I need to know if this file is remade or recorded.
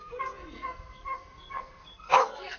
remade